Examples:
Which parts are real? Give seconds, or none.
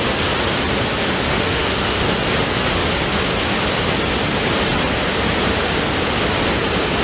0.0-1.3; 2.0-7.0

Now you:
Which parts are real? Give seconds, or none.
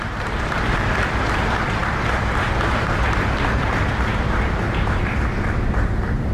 none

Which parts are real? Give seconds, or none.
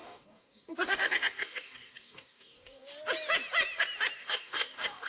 2.9-4.2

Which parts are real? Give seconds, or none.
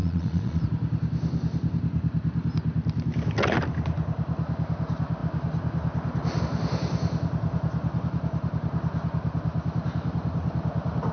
0.6-11.1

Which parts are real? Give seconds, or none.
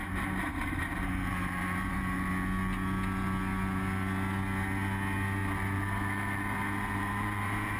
2.3-5.4